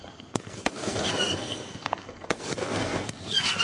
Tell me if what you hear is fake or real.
fake